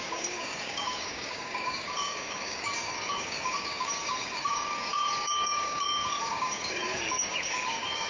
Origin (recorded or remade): remade